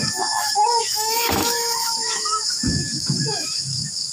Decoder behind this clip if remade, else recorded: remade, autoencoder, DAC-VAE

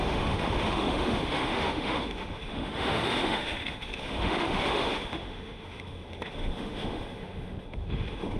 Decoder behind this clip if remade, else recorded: remade, autoencoder, DAC-VAE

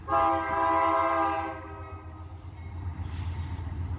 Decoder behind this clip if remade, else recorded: recorded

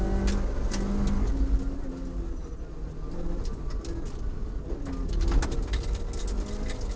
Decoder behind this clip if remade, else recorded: recorded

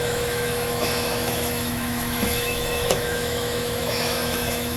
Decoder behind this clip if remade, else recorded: remade, autoencoder, DAC-VAE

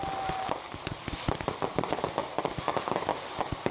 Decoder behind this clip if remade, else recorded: recorded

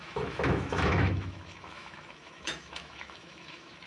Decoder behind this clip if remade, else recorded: remade, autoencoder, DAC-VAE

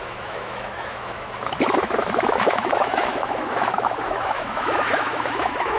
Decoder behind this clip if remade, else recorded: remade, autoencoder, DAC-VAE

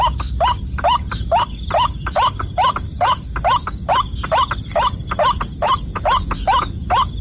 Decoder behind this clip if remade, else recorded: recorded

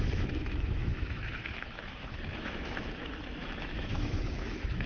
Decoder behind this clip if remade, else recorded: remade, autoencoder, DAC-VAE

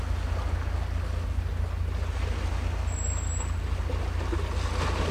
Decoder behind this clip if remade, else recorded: recorded